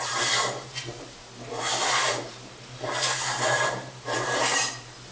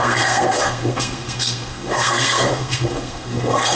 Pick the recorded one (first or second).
first